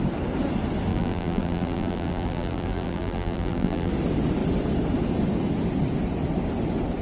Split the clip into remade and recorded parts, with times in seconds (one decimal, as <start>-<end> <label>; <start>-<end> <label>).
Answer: 0.0-0.9 recorded; 0.9-3.9 remade; 3.9-7.0 recorded